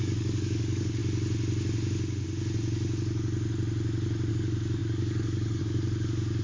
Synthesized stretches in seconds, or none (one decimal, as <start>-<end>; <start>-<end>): 0.0-1.0; 4.3-6.4